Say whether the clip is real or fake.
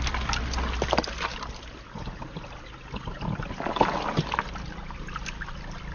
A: real